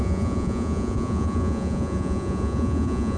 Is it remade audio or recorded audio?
remade